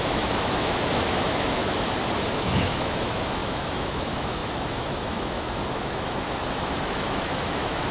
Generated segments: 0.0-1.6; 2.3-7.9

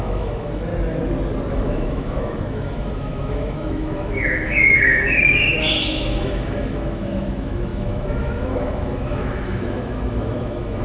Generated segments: 0.0-0.7; 1.5-10.8

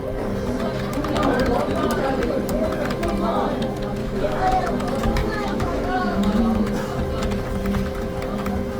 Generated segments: 4.0-4.7; 5.2-6.4